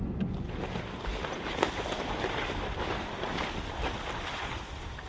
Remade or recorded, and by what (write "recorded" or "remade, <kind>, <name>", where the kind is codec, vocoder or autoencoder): recorded